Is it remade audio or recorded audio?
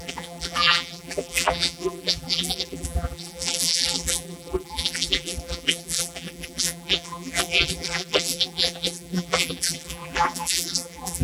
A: remade